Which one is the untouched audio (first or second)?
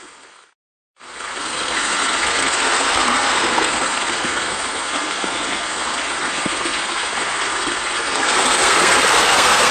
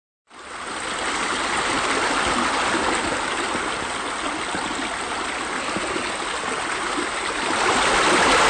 second